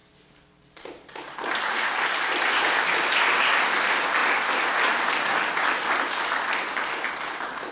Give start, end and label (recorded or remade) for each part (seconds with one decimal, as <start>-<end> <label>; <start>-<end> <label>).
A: 0.0-7.7 recorded